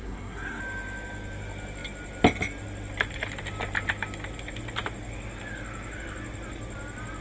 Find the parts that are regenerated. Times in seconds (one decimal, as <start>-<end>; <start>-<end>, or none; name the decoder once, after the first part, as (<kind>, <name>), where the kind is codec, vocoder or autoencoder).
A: 0.0-0.6 (codec, SNAC)